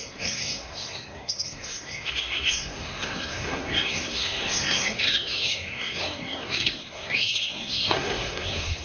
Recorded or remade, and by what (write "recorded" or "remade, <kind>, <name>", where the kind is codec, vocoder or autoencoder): remade, codec, SNAC